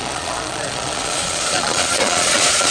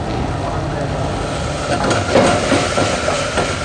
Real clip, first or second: second